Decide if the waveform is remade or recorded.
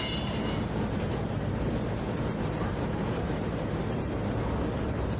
remade